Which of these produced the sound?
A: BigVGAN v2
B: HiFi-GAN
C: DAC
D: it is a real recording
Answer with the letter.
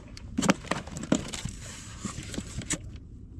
A